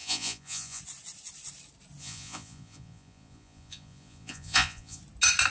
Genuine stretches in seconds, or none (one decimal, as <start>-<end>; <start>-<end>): 0.8-2.0; 5.0-5.5